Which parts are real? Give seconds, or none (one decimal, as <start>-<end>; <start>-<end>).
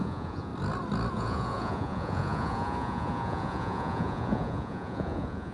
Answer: 0.5-1.1